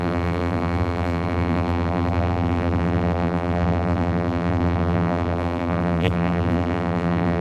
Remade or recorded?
remade